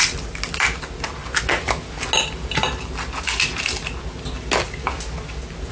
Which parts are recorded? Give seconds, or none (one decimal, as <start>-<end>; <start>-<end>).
0.0-5.7